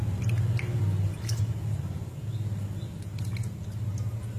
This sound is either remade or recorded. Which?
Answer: recorded